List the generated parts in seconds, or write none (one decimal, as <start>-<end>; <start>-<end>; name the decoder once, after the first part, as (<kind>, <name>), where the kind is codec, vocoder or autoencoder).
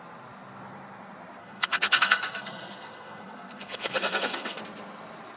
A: 1.4-4.6 (codec, SNAC)